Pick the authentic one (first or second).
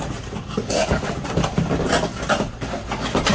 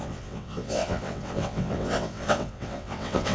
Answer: first